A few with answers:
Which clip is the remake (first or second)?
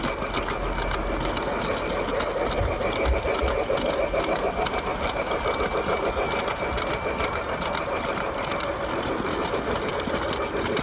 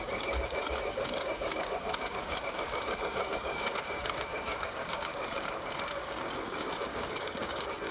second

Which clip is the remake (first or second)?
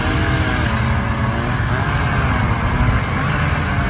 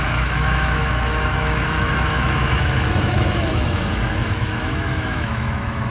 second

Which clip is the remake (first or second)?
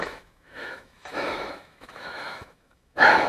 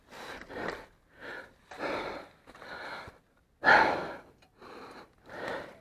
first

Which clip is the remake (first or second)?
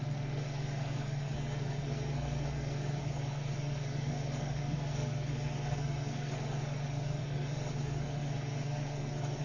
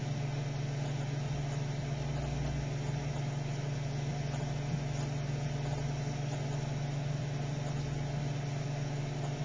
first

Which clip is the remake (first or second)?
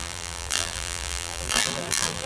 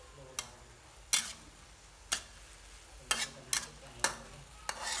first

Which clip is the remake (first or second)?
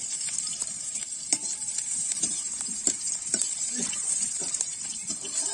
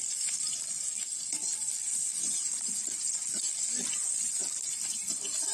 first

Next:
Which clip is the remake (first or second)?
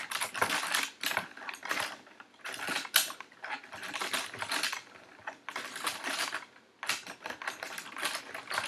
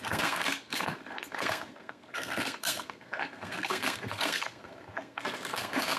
second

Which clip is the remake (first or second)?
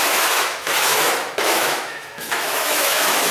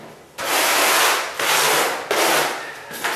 first